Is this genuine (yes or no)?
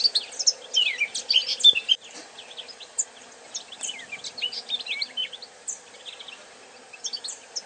yes